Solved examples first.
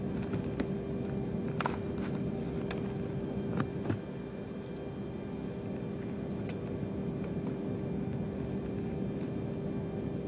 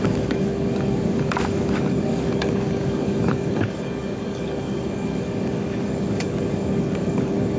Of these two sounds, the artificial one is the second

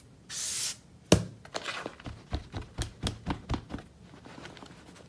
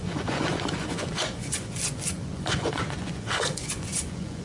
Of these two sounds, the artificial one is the second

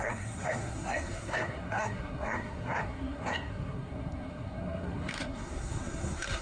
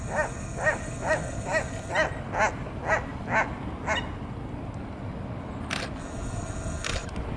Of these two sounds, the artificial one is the first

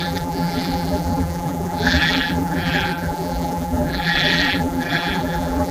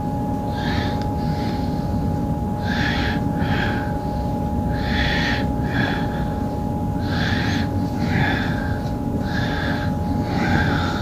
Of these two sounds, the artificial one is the first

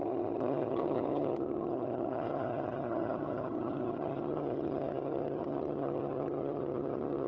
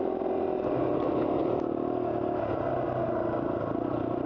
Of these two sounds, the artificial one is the first